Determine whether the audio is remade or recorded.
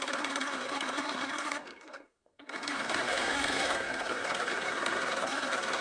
remade